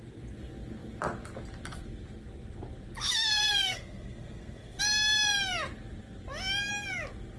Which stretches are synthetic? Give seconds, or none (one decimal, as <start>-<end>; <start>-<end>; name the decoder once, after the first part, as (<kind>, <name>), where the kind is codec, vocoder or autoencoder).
3.4-4.8 (codec, SNAC)